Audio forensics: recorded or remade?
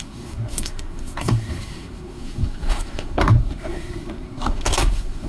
remade